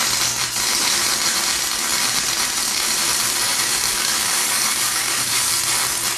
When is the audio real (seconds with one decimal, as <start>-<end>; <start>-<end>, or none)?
0.0-3.5; 5.5-6.2

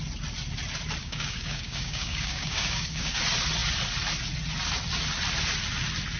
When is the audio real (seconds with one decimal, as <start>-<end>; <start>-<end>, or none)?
0.0-1.0; 3.2-6.2